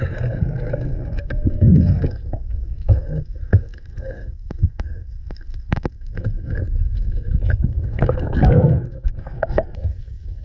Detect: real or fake fake